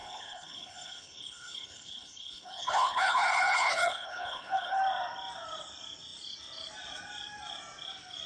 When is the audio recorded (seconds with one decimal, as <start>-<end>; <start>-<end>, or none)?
4.8-8.3